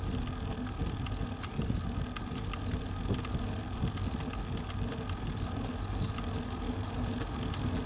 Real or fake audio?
real